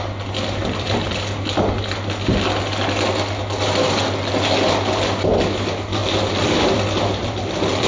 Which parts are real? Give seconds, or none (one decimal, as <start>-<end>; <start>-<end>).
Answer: 0.0-0.6; 1.7-6.0